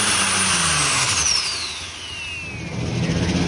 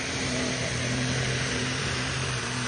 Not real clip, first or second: second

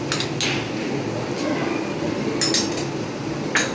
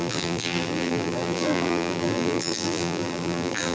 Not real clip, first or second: second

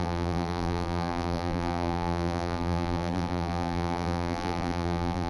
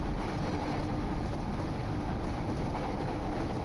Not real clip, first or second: first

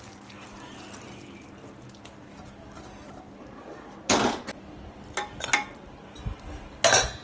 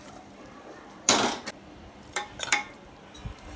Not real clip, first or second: second